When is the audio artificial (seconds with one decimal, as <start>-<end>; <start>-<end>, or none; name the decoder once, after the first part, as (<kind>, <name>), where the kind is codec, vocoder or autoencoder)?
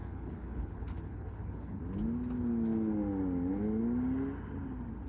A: 0.0-1.8 (codec, HILCodec)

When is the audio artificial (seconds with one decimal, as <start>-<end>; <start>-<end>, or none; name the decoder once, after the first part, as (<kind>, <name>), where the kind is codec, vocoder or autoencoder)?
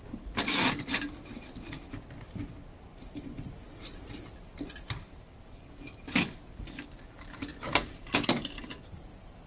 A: none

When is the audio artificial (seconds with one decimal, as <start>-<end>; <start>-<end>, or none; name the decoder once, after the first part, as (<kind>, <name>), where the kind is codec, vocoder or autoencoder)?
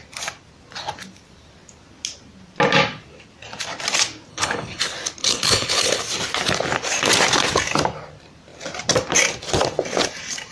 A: 4.3-4.8 (codec, HILCodec); 5.2-6.0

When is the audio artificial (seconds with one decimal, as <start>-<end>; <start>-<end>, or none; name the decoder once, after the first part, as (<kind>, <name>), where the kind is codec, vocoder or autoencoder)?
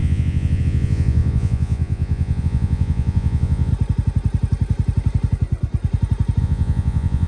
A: 0.0-3.7 (vocoder, Vocos); 6.4-7.3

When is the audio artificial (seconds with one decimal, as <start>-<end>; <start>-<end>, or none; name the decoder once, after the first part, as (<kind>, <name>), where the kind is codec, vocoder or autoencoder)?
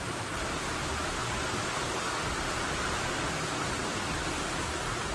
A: none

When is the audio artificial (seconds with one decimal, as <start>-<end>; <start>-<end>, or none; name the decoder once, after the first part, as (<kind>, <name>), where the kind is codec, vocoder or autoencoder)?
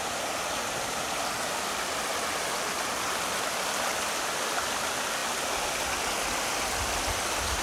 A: none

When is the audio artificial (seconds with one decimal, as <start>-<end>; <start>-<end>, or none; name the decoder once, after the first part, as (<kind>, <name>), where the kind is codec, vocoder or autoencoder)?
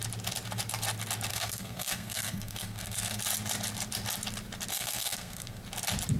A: 1.3-3.2 (codec, SNAC); 4.7-5.6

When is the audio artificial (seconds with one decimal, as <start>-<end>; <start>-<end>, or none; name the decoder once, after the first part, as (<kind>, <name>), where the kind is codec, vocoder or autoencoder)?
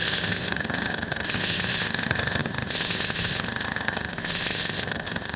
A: 0.0-5.4 (codec, ZipCodec)